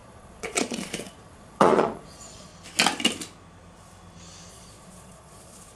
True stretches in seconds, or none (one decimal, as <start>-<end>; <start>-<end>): 2.5-4.5